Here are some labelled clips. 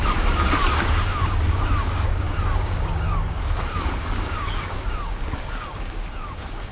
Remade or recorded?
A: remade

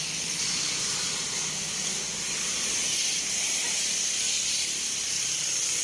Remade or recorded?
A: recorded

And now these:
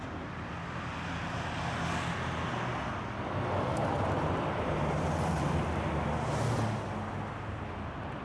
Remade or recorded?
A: recorded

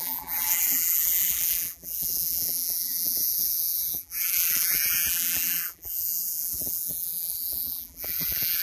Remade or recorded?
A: remade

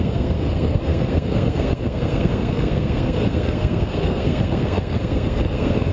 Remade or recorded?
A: remade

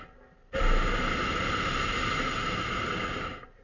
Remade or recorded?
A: recorded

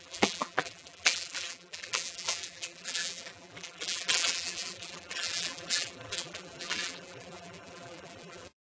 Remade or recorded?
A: remade